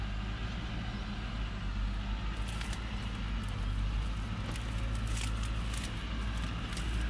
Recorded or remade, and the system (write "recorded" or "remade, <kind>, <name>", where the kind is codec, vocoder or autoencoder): recorded